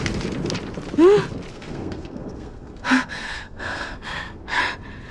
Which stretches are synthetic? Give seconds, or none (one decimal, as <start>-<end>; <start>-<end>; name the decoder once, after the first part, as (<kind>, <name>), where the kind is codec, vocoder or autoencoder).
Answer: 1.5-4.6 (codec, SNAC)